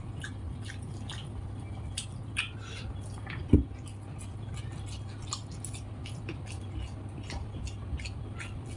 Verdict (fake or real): real